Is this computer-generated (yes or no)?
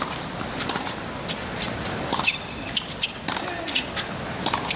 no